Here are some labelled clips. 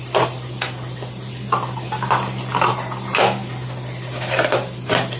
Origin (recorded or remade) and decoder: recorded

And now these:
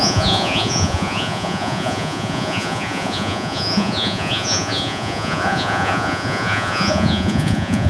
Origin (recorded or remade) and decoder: remade, vocoder, Vocos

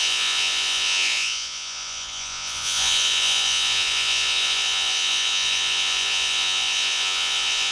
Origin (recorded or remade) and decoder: remade, vocoder, Vocos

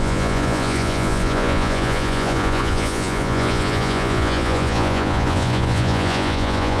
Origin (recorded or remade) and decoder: remade, vocoder, Vocos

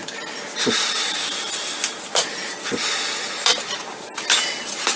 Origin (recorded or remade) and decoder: recorded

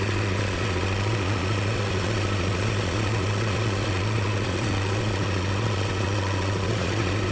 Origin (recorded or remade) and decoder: remade, vocoder, Vocos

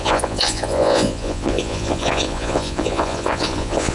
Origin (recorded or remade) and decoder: remade, vocoder, Vocos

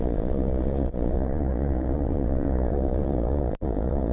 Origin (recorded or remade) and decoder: remade, vocoder, Vocos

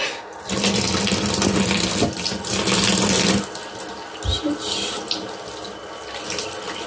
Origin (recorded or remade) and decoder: recorded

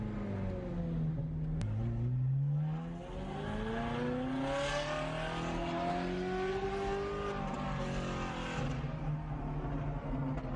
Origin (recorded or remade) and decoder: recorded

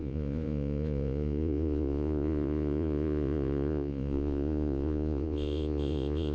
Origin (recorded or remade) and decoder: remade, vocoder, Vocos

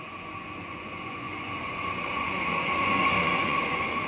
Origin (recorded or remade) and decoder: remade, vocoder, Vocos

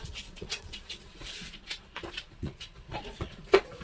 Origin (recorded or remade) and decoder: remade, vocoder, Vocos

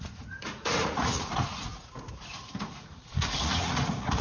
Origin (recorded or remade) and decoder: remade, vocoder, Vocos